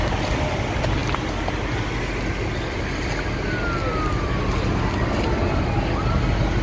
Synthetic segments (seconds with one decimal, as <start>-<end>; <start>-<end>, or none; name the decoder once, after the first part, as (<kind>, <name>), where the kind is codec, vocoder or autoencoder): none